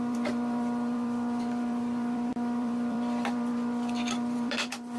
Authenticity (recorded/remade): remade